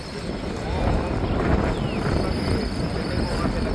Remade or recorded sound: recorded